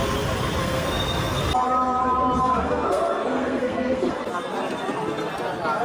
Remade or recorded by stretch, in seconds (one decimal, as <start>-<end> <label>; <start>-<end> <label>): 0.0-0.6 recorded; 0.6-1.4 remade; 1.4-2.4 recorded; 2.4-4.2 remade; 4.2-5.8 recorded